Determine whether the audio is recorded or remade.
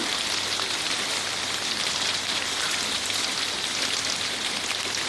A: recorded